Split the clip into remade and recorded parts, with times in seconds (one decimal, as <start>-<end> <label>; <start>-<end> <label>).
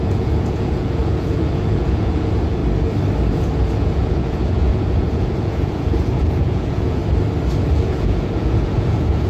0.0-2.6 remade; 2.6-3.3 recorded; 3.3-7.0 remade; 7.0-7.6 recorded; 7.6-9.3 remade